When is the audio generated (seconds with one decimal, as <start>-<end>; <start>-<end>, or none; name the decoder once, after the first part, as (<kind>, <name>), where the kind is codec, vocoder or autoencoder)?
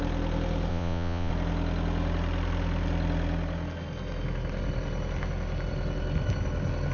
0.7-1.3 (vocoder, Vocos)